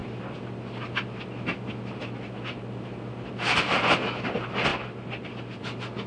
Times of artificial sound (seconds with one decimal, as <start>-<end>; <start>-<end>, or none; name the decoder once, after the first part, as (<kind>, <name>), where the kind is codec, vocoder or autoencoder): none